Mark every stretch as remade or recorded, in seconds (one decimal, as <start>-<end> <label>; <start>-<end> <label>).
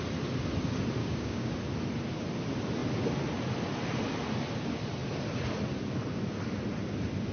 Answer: 0.0-1.0 recorded; 1.0-1.5 remade; 1.5-7.3 recorded